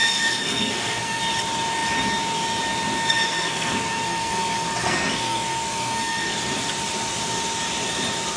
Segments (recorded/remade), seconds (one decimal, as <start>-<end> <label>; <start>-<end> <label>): 0.0-1.2 remade; 1.2-3.2 recorded; 3.2-6.4 remade; 6.4-8.4 recorded